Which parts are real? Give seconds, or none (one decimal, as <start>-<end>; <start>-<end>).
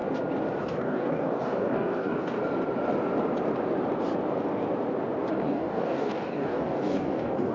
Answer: 0.0-0.6; 2.4-5.3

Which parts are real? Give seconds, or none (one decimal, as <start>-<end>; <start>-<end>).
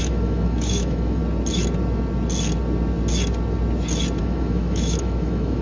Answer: 1.2-4.2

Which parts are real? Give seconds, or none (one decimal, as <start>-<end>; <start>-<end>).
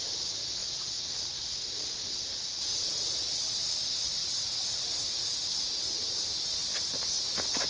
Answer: 0.0-0.6; 1.3-4.2; 5.5-7.7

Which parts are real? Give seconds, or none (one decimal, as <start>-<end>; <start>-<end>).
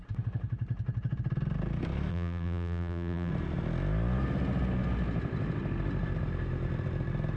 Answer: 0.0-2.1; 3.3-7.4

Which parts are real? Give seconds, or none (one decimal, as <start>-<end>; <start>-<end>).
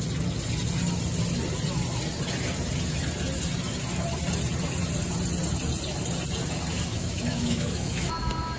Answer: 0.0-6.9; 8.1-8.6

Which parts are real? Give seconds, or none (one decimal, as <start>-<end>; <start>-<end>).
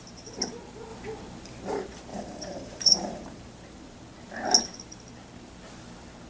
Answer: 0.0-2.1; 4.0-6.3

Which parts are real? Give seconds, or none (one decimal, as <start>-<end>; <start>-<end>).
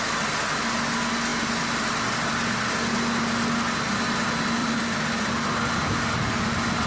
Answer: 0.0-4.6; 5.6-6.9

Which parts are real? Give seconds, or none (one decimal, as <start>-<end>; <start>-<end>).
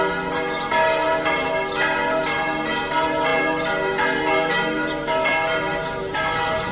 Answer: 0.0-6.7